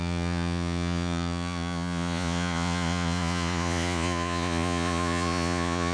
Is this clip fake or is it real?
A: fake